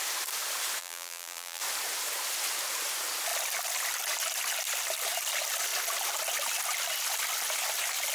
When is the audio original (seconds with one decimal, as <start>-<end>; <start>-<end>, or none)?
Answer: 0.0-0.8; 1.6-8.1

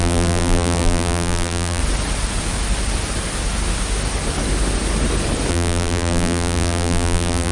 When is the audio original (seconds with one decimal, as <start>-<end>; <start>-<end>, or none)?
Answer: 1.8-5.5

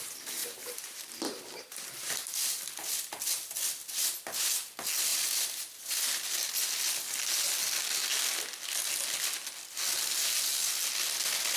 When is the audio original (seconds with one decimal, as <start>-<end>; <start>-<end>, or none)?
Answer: 0.0-0.4; 2.3-11.6

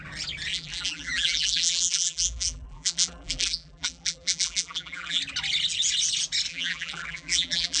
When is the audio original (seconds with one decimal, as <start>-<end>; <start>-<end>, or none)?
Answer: 0.0-0.5; 5.2-6.5

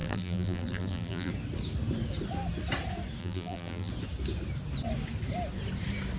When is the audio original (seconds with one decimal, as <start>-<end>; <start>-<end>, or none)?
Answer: 1.3-3.2; 3.9-6.2

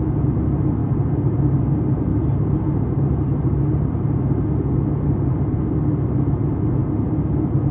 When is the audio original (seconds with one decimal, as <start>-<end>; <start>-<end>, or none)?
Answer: 0.0-2.1; 4.4-6.8